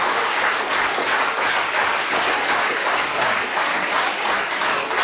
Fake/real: fake